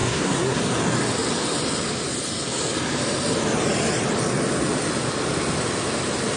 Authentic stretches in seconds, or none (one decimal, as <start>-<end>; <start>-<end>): 0.6-6.4